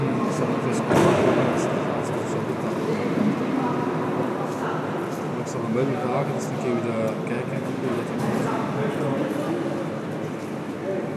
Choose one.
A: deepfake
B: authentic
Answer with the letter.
B